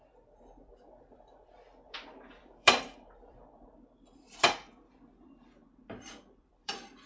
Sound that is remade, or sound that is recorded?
remade